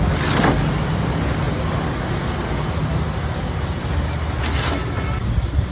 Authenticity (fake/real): real